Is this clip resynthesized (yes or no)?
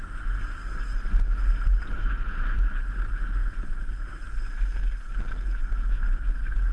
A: no